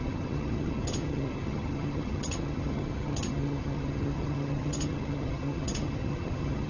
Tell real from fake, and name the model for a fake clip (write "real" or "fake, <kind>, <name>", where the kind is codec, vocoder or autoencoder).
fake, vocoder, HiFi-GAN